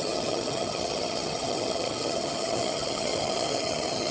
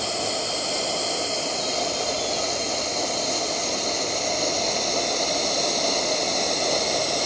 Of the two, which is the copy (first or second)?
first